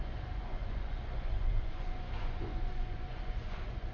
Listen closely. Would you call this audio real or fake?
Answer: fake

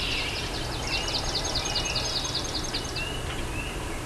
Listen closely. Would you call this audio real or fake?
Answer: real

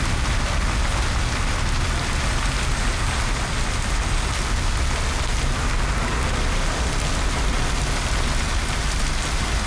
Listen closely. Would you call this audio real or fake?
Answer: real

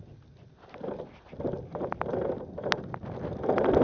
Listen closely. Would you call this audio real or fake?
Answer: real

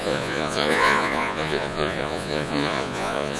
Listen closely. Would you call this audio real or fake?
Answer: fake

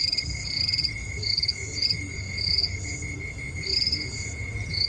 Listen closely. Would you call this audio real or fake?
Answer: fake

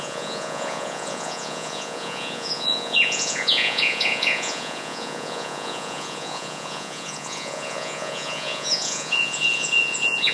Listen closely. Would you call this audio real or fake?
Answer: fake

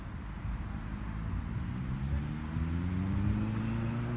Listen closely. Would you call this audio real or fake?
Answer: real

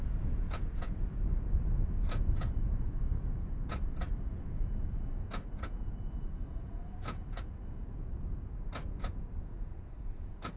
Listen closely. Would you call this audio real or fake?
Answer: fake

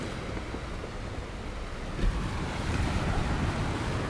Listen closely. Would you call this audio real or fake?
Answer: real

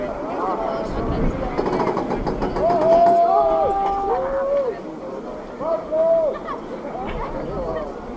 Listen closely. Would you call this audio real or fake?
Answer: real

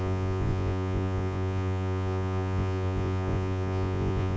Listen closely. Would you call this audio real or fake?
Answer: fake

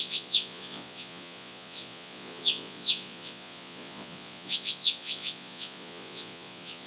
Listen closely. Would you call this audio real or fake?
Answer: fake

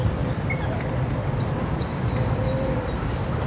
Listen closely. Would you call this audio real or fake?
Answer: real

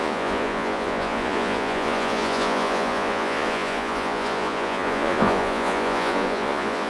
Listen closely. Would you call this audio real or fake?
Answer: fake